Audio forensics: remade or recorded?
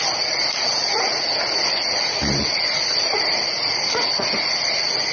recorded